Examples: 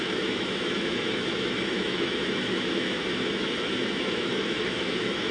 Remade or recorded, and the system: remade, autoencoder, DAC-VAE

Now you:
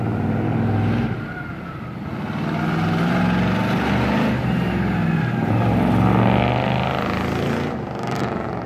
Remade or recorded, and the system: recorded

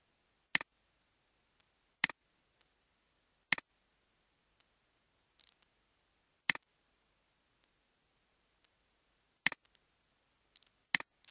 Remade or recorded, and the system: recorded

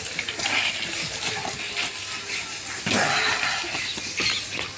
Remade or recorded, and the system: recorded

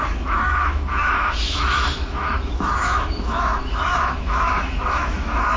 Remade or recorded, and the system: remade, autoencoder, DAC-VAE